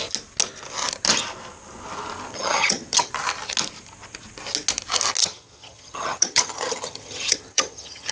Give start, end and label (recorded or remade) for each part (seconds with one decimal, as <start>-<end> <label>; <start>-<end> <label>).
0.0-2.3 recorded; 2.3-3.1 remade; 3.1-5.2 recorded; 5.2-8.1 remade